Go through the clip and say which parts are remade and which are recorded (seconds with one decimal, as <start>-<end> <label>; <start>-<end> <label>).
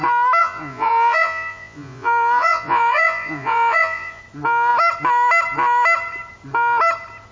0.0-0.4 recorded; 0.4-4.2 remade; 4.2-7.3 recorded